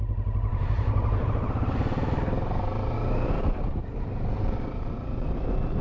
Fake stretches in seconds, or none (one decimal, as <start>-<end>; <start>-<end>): 0.5-4.0